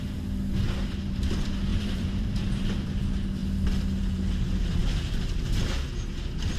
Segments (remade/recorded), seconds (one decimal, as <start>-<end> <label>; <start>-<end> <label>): 0.0-1.7 recorded; 1.7-2.8 remade; 2.8-6.6 recorded